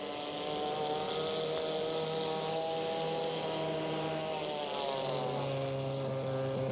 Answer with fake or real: real